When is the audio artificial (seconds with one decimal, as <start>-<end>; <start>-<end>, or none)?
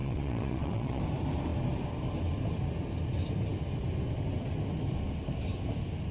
0.0-1.0